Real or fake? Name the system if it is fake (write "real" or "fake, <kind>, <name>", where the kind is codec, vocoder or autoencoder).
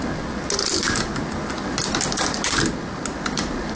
real